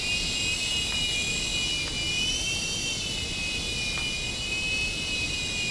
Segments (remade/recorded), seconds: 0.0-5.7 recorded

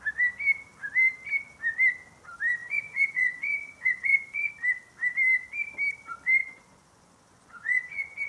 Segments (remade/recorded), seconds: 0.0-2.6 recorded; 2.6-4.5 remade; 4.5-6.4 recorded; 6.4-8.3 remade

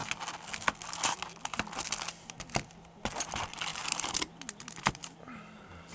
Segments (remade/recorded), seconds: 0.0-5.9 recorded

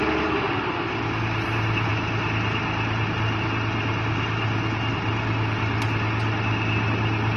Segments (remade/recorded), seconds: 0.0-7.4 recorded

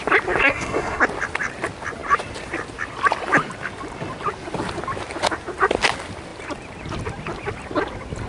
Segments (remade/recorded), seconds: 0.0-0.4 recorded; 0.4-1.0 remade; 1.0-8.3 recorded

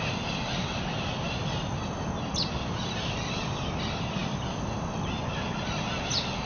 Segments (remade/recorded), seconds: 0.0-6.5 recorded

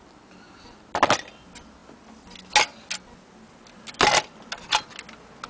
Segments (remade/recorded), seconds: 0.0-5.5 recorded

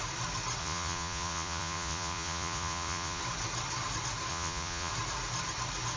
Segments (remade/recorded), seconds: 0.0-0.6 recorded; 0.6-3.2 remade; 3.2-4.3 recorded; 4.3-4.9 remade; 4.9-6.0 recorded